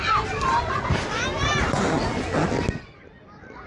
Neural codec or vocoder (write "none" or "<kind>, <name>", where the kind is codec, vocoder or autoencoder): none